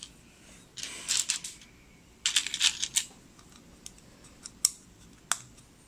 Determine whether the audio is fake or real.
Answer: real